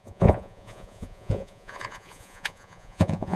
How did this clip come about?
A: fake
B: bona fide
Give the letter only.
A